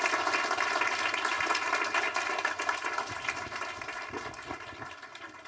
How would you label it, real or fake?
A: real